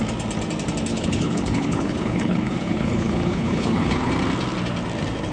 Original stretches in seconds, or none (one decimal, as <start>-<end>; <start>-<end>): 0.0-0.9; 4.1-5.3